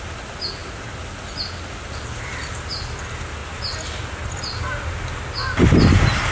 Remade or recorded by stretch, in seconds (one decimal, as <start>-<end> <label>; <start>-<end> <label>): 0.0-3.4 recorded; 3.4-4.6 remade; 4.6-6.3 recorded